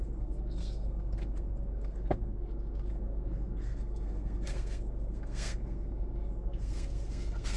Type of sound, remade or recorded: remade